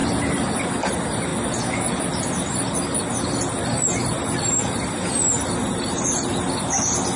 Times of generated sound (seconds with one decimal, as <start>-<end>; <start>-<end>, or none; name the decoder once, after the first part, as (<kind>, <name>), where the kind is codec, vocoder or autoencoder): 4.0-5.5 (vocoder, BigVGAN v2)